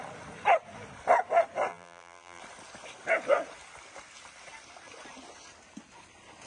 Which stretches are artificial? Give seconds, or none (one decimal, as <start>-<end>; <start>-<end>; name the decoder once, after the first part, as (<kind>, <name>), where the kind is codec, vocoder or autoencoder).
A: 1.7-2.4 (vocoder, BigVGAN v2)